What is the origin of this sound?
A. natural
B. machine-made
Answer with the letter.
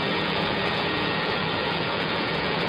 B